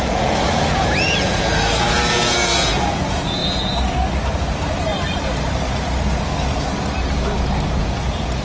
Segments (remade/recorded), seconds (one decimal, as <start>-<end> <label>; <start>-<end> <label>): 0.0-3.4 remade; 3.4-7.8 recorded; 7.8-8.4 remade